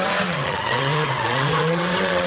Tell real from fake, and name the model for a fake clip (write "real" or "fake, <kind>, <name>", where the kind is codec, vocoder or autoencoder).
fake, vocoder, WaveNeXt